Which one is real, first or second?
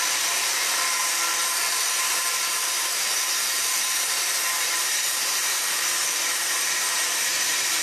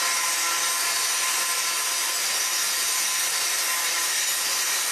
second